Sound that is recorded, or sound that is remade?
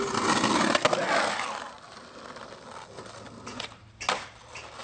recorded